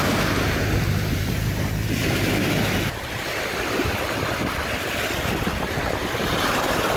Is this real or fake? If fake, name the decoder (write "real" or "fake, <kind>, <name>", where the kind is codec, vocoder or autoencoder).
fake, vocoder, BigVGAN v2